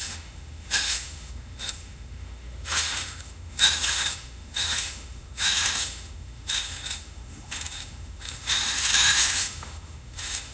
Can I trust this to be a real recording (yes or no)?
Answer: no